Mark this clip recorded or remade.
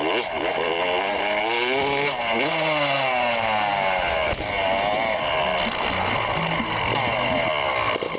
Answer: recorded